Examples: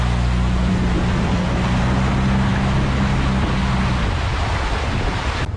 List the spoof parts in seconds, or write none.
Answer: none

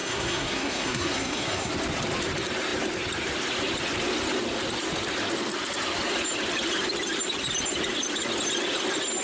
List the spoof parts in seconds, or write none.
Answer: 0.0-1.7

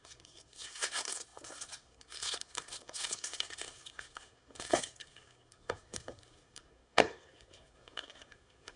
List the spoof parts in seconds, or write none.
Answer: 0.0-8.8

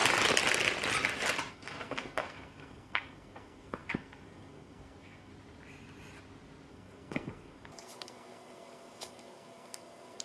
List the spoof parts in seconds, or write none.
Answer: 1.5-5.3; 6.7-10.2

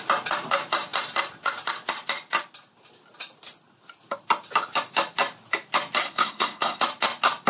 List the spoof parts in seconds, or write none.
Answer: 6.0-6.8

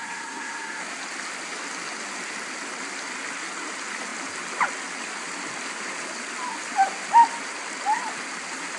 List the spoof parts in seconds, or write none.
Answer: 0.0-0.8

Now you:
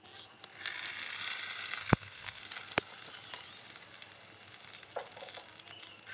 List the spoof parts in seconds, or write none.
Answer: 1.8-2.4